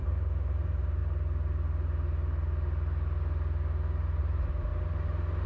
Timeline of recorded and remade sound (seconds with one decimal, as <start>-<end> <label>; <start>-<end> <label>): 0.0-1.0 remade; 1.0-4.2 recorded; 4.2-4.7 remade; 4.7-5.5 recorded